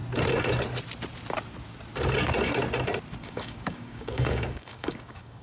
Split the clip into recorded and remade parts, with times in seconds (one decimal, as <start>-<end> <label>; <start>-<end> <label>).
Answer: 0.0-3.2 recorded; 3.2-5.4 remade